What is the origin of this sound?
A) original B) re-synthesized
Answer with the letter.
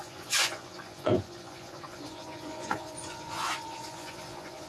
B